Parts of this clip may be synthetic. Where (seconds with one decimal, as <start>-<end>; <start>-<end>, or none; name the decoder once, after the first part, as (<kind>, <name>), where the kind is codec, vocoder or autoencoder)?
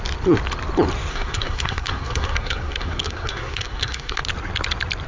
1.1-4.2 (codec, SNAC)